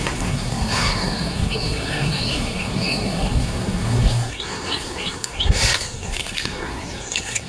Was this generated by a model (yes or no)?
yes